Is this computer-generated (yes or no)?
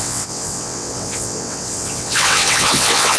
yes